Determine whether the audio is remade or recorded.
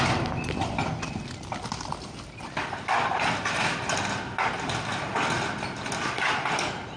recorded